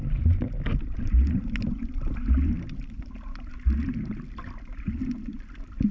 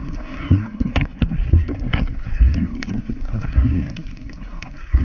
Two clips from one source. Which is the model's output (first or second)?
second